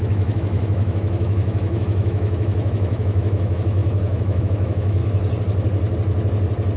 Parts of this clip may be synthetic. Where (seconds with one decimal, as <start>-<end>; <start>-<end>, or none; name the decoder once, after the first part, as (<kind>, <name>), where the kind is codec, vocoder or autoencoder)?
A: 0.0-5.0 (autoencoder, DAC-VAE)